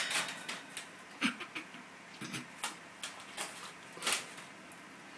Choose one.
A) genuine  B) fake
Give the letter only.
A